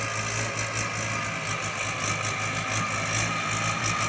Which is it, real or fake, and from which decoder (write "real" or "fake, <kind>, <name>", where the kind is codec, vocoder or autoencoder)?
real